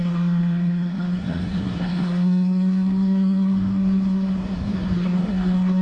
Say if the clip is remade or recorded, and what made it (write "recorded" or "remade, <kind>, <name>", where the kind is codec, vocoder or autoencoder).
remade, codec, SNAC